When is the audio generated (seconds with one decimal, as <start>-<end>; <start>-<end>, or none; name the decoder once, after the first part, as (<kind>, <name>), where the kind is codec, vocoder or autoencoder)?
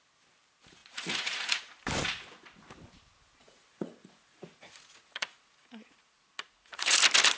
0.8-1.6 (vocoder, Vocos); 3.4-6.9